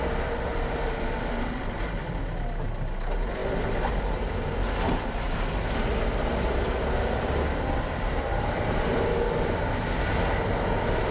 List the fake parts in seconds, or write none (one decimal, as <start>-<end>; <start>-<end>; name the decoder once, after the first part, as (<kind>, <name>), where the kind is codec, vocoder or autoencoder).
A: 8.3-9.1 (vocoder, BigVGAN v2)